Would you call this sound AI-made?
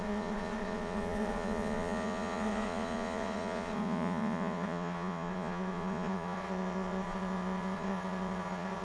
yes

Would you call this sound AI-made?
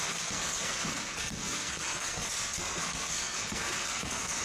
yes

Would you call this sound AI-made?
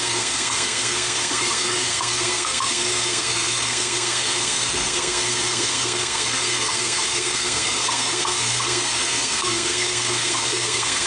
yes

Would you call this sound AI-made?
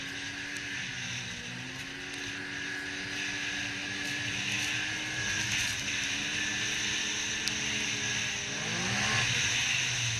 no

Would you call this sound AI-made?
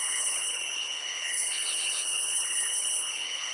yes